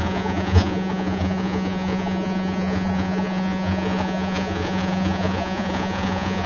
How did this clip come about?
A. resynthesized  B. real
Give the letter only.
A